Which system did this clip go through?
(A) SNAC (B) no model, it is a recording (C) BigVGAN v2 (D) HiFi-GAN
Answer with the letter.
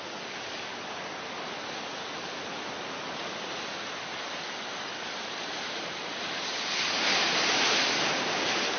B